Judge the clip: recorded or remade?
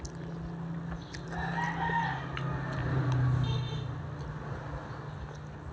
recorded